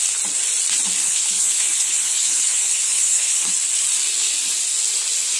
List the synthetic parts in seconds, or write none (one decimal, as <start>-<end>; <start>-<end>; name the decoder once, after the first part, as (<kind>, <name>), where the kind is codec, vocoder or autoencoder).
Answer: 1.0-3.5 (codec, HILCodec)